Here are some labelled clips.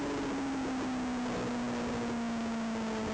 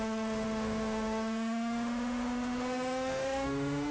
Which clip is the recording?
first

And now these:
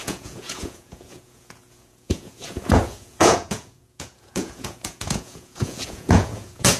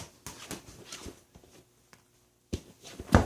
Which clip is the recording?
second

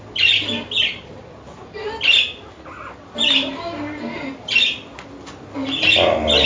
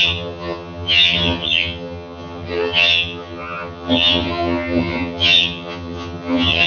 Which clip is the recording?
first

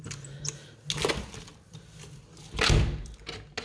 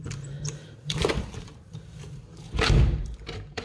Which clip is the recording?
first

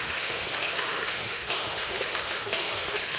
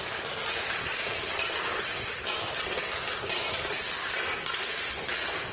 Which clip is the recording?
second